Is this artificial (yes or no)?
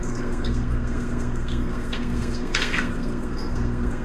yes